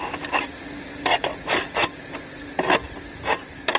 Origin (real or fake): real